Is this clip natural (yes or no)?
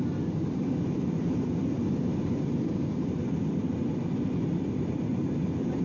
yes